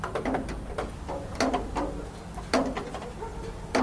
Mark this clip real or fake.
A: real